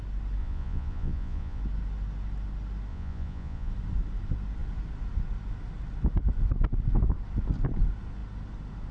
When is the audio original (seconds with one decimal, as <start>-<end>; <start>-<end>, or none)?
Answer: 0.0-0.4; 1.6-2.9; 3.7-8.9